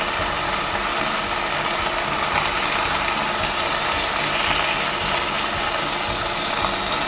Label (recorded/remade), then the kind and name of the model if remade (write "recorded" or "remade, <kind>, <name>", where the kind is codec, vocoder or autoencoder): recorded